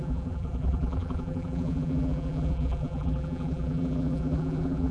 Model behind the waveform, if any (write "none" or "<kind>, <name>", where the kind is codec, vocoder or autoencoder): vocoder, BigVGAN v2